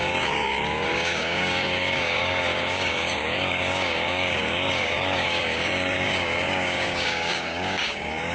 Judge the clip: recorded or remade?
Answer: remade